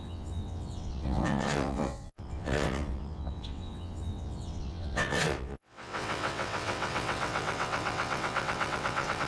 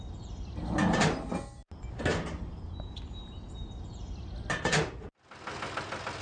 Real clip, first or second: second